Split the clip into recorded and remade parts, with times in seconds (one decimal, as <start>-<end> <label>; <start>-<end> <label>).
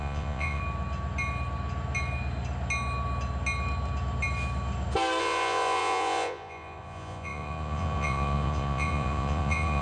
0.0-0.6 remade; 0.6-5.2 recorded; 5.2-9.8 remade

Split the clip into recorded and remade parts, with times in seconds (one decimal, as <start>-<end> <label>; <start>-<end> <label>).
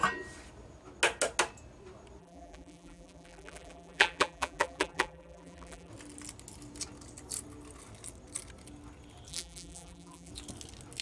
0.0-2.2 recorded; 2.2-5.9 remade; 5.9-9.3 recorded; 9.3-10.3 remade; 10.3-11.0 recorded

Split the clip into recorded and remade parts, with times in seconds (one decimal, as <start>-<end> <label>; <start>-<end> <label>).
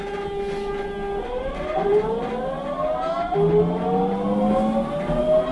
0.0-5.5 recorded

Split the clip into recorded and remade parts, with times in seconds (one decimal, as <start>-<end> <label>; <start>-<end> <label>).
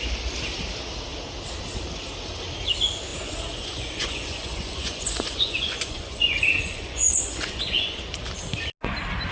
0.0-3.1 recorded; 3.1-8.0 remade; 8.0-9.3 recorded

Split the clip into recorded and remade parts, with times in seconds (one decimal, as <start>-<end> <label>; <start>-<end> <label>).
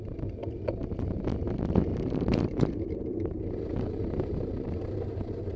0.0-1.9 recorded; 1.9-5.6 remade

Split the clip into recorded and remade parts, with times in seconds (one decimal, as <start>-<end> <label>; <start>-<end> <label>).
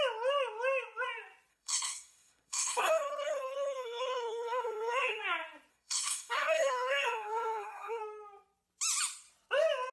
0.0-1.5 recorded; 1.5-5.2 remade; 5.2-5.7 recorded; 5.7-8.0 remade; 8.0-9.9 recorded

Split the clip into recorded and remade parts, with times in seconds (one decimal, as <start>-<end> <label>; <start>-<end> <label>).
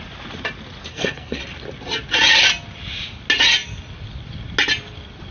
0.0-0.9 recorded; 0.9-1.4 remade; 1.4-5.3 recorded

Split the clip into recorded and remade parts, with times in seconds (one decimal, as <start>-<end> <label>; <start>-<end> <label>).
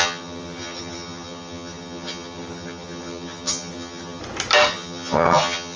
0.0-4.2 remade; 4.2-4.7 recorded; 4.7-5.8 remade